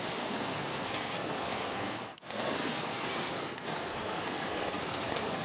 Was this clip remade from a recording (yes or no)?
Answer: yes